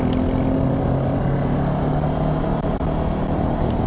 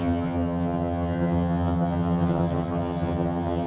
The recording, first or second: first